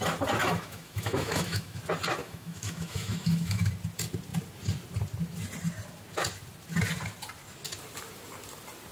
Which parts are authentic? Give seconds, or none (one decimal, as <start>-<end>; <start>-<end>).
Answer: 0.0-0.4; 1.8-2.2; 3.7-8.9